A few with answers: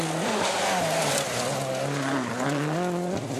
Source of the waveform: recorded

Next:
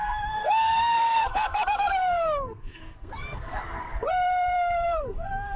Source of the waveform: remade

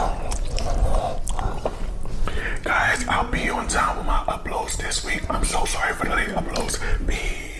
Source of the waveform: recorded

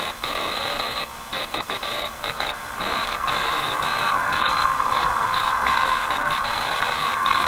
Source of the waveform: remade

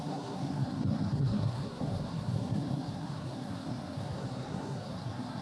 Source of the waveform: remade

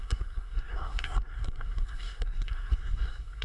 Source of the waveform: remade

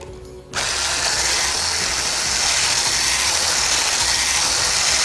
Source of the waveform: recorded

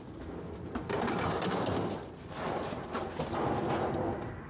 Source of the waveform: recorded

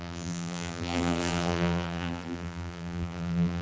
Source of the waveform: remade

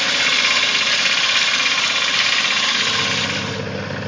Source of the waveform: recorded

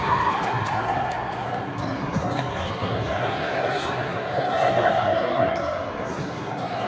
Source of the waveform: remade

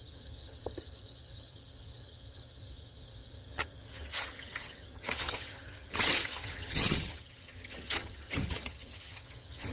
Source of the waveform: remade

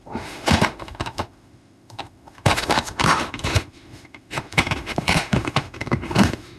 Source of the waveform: remade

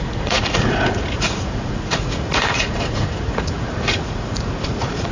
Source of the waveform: remade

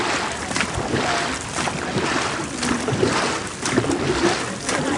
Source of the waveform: recorded